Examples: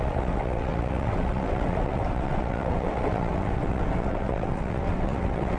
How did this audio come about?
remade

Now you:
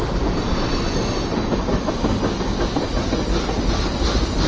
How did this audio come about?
recorded